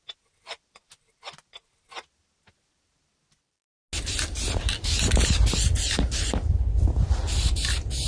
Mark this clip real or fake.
real